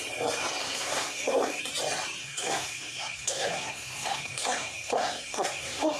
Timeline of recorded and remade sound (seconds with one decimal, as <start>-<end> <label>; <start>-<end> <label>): 0.0-0.6 recorded; 0.6-1.6 remade; 1.6-2.2 recorded; 2.2-6.0 remade